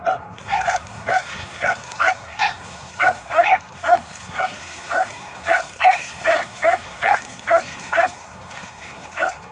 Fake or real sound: fake